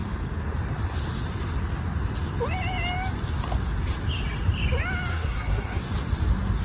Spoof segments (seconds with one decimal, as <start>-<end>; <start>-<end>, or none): 5.1-5.8